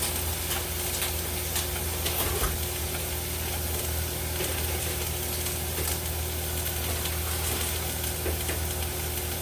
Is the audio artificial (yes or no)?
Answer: no